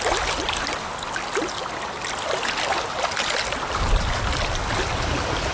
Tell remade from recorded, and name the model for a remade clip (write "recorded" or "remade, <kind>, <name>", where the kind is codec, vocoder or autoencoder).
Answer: recorded